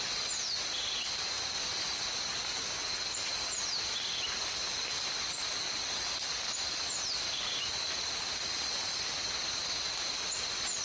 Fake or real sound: real